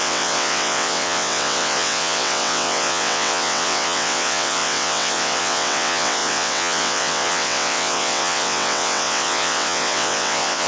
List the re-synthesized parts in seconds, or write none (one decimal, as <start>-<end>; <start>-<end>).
0.0-10.7

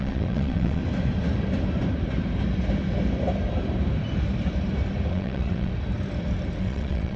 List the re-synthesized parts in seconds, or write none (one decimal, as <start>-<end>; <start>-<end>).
0.0-0.8; 5.1-5.7; 6.6-7.2